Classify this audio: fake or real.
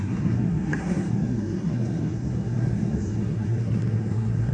fake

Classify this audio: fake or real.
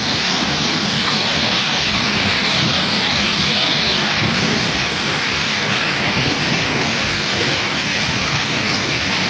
fake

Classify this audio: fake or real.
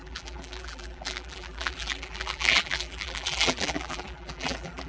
fake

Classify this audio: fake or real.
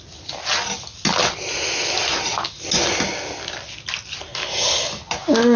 real